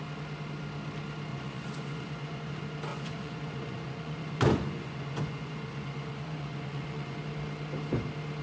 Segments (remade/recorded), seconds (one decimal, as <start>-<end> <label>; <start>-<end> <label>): 0.0-1.3 recorded; 1.3-2.5 remade; 2.5-2.9 recorded; 2.9-7.2 remade; 7.2-8.4 recorded